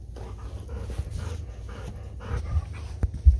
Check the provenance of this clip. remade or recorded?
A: recorded